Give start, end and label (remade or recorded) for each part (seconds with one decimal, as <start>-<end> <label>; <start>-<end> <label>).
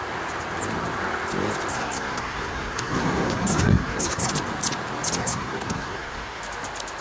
0.0-1.7 recorded; 1.7-4.3 remade; 4.3-5.2 recorded; 5.2-6.4 remade; 6.4-7.0 recorded